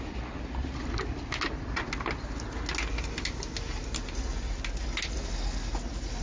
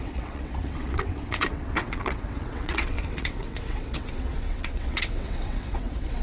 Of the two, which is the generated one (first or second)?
second